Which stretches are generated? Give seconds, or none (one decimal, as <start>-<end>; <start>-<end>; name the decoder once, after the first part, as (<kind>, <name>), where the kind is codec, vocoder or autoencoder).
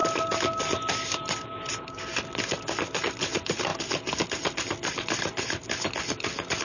none